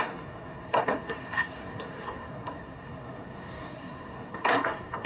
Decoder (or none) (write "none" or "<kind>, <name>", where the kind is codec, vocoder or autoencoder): codec, SNAC